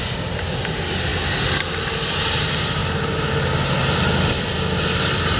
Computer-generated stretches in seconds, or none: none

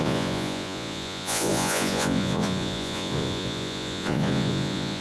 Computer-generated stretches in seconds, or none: 0.0-5.0 (vocoder, Vocos)

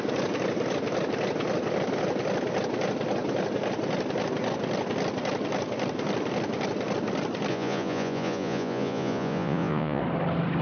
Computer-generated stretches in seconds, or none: 7.5-10.0 (vocoder, Vocos)